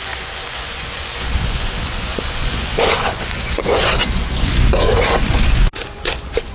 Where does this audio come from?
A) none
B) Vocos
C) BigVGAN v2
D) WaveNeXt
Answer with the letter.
B